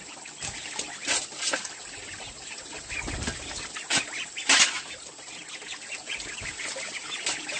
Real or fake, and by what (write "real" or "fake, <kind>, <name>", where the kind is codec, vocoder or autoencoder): real